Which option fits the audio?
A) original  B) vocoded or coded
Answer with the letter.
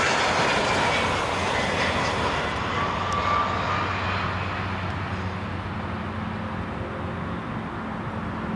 A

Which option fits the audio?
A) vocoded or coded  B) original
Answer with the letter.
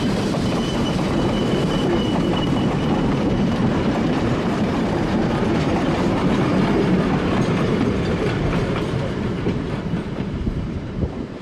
A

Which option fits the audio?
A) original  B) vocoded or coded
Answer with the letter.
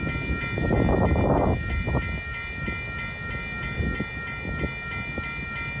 A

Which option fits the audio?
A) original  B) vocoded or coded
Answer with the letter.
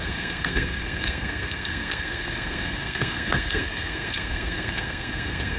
B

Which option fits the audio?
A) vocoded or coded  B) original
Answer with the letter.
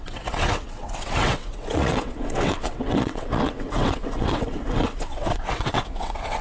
A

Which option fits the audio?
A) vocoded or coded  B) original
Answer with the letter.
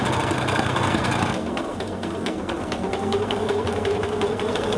A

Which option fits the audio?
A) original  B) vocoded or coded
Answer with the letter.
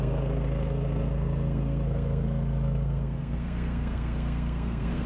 B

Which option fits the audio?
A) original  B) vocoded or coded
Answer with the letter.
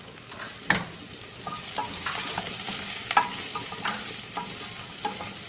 A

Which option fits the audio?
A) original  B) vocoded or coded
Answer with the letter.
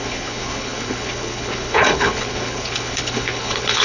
B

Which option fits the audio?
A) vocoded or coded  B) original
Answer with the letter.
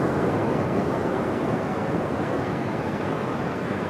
A